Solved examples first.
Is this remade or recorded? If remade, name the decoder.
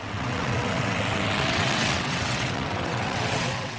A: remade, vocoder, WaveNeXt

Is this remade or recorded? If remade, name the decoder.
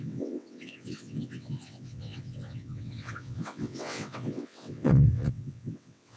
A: remade, vocoder, WaveNeXt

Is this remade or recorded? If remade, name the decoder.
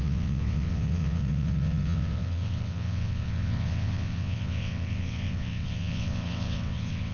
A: remade, vocoder, WaveNeXt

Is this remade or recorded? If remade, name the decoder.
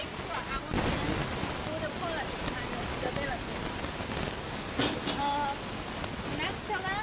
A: recorded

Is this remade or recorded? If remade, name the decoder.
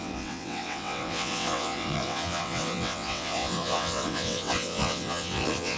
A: remade, vocoder, WaveNeXt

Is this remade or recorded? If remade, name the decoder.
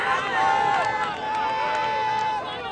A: recorded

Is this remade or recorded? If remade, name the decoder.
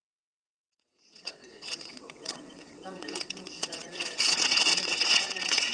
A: remade, vocoder, WaveNeXt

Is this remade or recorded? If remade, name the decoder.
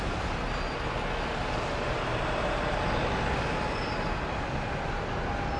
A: recorded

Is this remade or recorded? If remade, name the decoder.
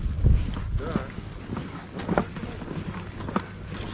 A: recorded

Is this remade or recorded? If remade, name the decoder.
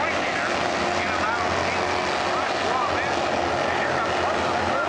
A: recorded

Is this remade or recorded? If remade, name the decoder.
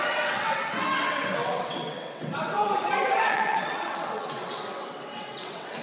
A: remade, vocoder, WaveNeXt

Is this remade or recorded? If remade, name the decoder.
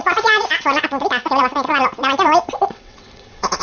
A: remade, vocoder, WaveNeXt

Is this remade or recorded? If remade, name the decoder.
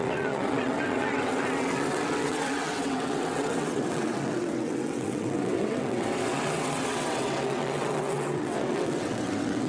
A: remade, vocoder, WaveNeXt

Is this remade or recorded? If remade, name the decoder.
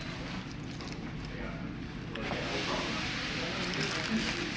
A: recorded